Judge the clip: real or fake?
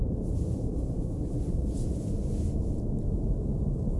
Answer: fake